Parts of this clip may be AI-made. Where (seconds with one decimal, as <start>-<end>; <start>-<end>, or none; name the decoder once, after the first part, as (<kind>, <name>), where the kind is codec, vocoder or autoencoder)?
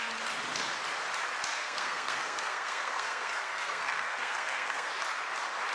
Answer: 1.5-4.9 (codec, SNAC)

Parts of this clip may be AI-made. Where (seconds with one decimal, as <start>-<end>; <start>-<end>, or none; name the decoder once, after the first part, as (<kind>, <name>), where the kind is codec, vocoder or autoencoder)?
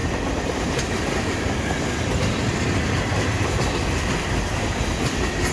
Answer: 0.0-5.5 (vocoder, BigVGAN v2)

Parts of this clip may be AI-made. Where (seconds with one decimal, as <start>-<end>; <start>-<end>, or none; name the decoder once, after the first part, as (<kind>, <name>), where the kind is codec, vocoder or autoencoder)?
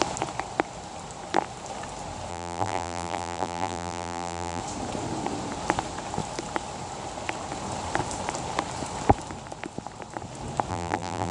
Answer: 2.3-4.6 (vocoder, BigVGAN v2); 10.7-11.3